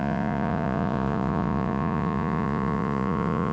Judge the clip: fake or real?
fake